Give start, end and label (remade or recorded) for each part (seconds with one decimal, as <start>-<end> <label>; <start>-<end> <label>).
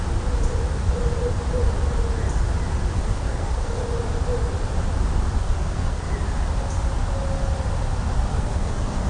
0.0-2.9 recorded; 2.9-3.8 remade; 3.8-5.4 recorded; 5.4-6.1 remade; 6.1-8.3 recorded; 8.3-9.1 remade